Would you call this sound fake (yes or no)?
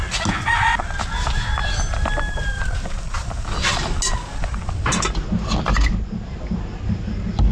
no